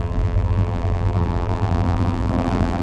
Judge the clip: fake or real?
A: fake